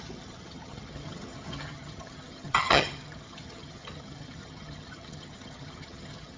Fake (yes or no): yes